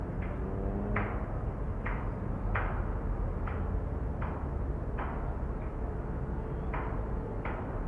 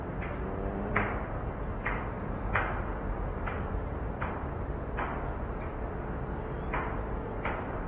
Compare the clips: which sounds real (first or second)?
first